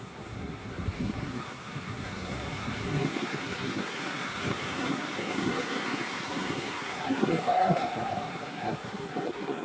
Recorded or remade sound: remade